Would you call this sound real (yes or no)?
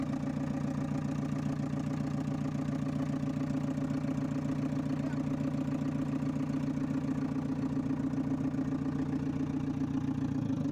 yes